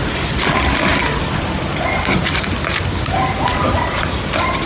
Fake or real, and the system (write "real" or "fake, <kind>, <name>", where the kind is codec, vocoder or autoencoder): real